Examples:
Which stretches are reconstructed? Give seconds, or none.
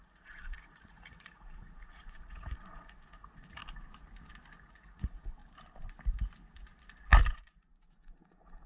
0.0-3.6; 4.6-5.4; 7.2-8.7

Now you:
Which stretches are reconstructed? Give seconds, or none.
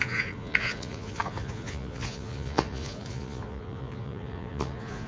0.0-5.1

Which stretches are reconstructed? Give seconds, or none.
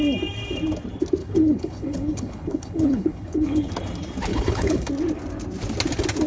1.2-3.7; 4.3-4.9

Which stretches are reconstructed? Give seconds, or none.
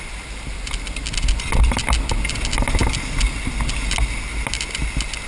none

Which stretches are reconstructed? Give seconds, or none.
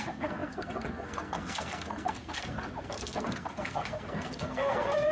0.0-5.1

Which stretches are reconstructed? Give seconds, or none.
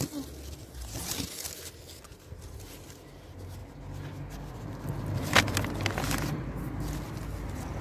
none